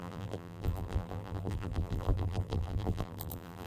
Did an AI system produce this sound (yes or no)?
yes